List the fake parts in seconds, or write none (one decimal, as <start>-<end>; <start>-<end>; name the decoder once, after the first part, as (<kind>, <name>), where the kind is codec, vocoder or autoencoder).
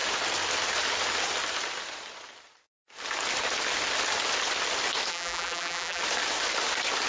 5.1-6.0 (vocoder, BigVGAN v2)